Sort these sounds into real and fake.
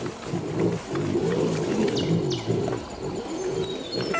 real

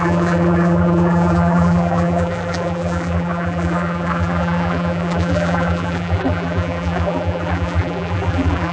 fake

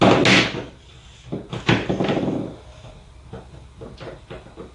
real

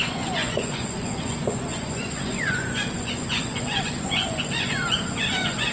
fake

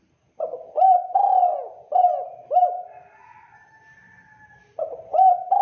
real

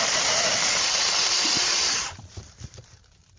fake